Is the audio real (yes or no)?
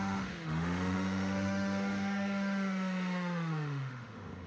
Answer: no